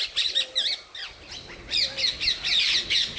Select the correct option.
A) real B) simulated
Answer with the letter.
A